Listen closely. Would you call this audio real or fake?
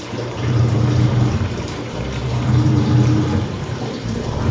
fake